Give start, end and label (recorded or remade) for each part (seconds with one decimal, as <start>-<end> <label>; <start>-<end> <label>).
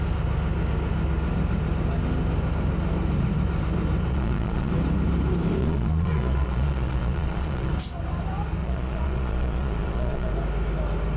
0.0-4.1 recorded; 4.1-4.7 remade; 4.7-5.6 recorded; 5.6-7.7 remade; 7.7-8.6 recorded; 8.6-10.3 remade; 10.3-11.2 recorded